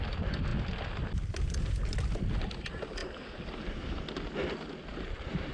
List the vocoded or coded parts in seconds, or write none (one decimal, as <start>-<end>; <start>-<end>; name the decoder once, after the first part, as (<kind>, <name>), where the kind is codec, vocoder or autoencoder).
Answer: 4.9-5.5 (vocoder, BigVGAN v2)